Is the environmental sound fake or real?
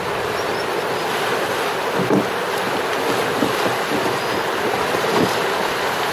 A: real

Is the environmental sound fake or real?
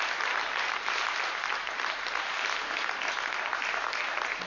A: real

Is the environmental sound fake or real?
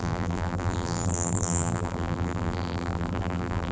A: fake